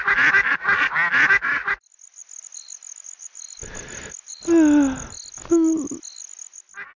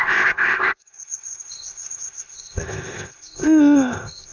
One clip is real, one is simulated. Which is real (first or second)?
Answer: first